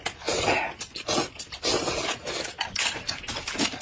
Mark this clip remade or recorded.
recorded